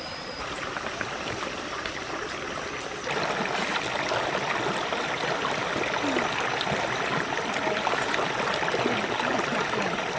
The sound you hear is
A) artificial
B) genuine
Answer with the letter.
B